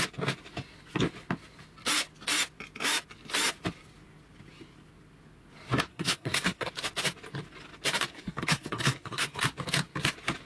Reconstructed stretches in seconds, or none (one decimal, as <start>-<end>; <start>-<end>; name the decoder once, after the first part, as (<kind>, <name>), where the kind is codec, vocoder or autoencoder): 5.9-6.7 (codec, SNAC); 8.1-9.4